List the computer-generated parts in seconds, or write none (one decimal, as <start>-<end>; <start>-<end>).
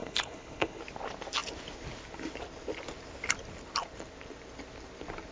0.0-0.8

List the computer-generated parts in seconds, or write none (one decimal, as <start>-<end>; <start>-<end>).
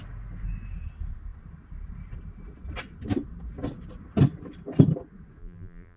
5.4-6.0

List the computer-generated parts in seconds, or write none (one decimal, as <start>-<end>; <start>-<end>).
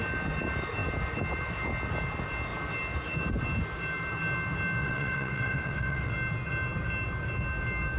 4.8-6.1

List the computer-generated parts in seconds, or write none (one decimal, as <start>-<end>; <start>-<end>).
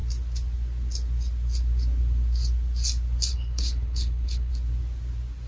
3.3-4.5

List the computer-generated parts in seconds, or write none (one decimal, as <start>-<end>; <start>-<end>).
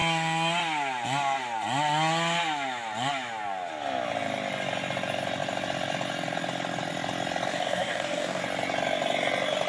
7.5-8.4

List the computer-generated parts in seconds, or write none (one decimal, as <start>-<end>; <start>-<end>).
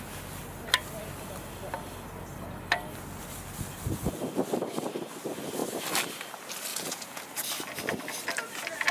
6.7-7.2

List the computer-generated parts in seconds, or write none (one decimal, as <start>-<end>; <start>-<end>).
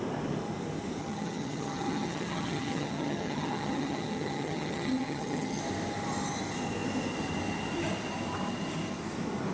1.0-5.6